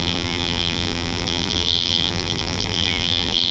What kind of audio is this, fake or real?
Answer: fake